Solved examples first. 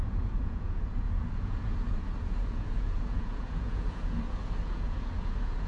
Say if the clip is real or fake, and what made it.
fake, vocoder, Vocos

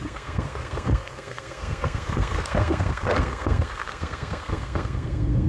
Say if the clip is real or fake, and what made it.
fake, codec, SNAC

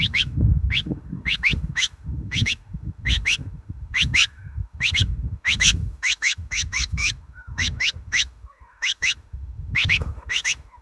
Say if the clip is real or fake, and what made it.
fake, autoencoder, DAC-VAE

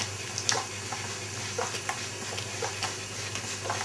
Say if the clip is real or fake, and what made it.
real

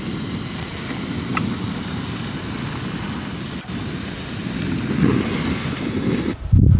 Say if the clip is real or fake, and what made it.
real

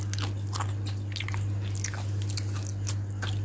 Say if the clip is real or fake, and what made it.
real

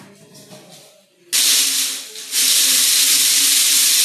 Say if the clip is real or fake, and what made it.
real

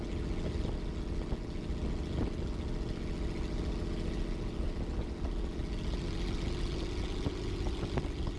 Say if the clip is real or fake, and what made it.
real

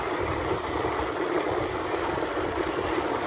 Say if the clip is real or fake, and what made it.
real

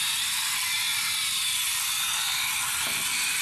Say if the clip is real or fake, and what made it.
real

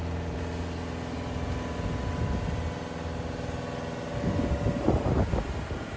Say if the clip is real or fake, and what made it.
real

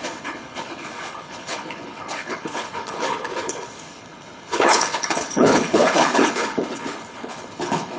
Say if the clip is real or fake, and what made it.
fake, codec, HILCodec